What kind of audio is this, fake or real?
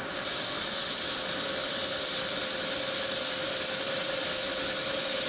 real